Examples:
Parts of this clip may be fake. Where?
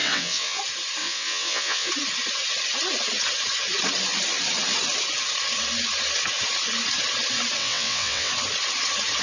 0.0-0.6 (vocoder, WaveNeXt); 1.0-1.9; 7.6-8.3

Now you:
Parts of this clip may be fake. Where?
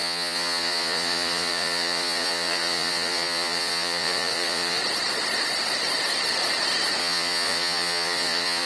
0.0-4.8 (vocoder, Vocos); 7.0-8.7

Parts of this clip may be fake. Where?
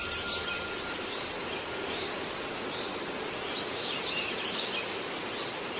none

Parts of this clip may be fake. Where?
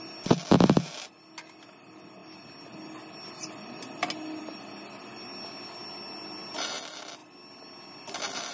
none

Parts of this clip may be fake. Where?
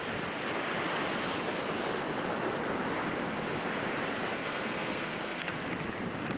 4.3-5.5 (codec, SNAC)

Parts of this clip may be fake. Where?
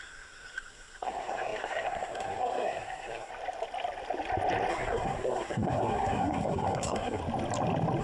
0.0-3.3 (codec, SNAC); 4.7-7.2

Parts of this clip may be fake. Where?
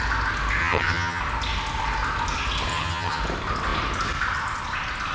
0.6-1.2 (vocoder, HiFi-GAN); 2.7-3.2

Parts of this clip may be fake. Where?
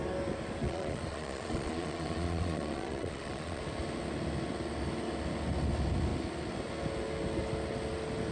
0.6-3.6 (vocoder, Vocos)